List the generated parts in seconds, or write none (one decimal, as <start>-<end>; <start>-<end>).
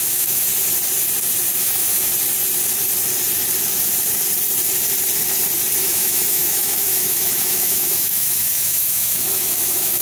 0.0-0.5; 1.6-2.1; 5.8-10.0